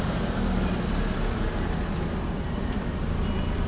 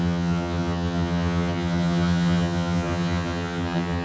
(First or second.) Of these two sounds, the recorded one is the first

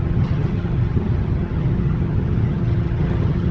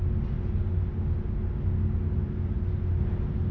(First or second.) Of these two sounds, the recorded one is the second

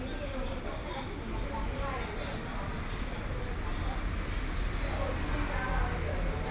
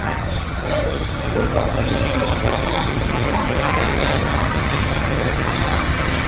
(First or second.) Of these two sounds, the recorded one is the first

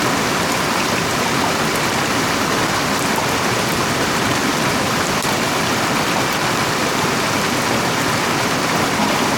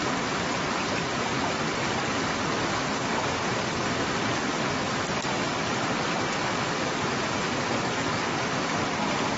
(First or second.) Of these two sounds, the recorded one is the second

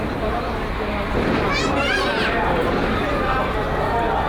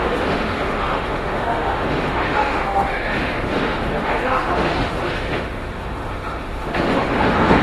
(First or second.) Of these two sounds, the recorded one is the first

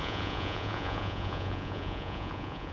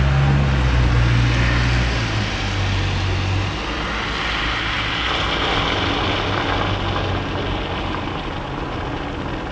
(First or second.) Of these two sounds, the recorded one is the second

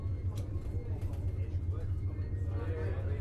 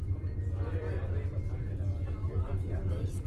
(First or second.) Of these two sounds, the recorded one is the first